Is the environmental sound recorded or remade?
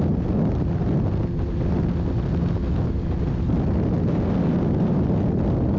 recorded